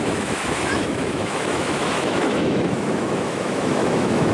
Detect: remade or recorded remade